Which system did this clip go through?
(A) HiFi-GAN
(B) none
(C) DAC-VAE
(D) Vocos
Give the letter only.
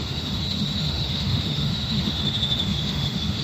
C